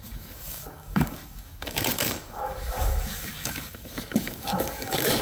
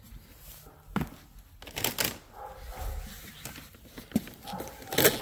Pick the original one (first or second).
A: second